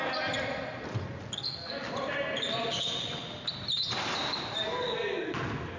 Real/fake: real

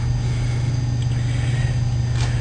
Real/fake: real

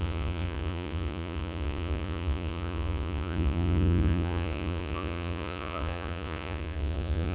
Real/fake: fake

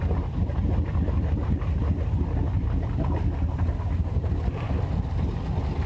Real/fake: real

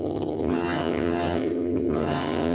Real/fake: fake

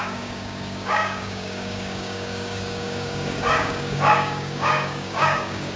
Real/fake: fake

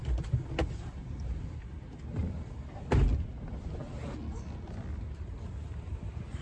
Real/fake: real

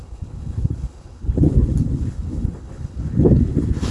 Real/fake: fake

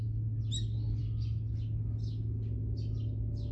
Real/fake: real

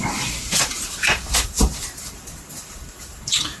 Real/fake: fake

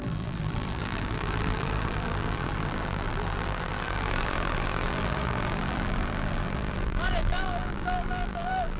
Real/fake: fake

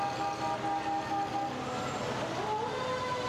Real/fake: real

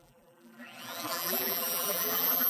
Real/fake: fake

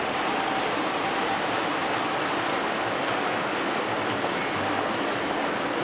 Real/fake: real